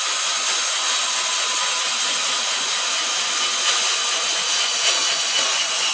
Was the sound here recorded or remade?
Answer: remade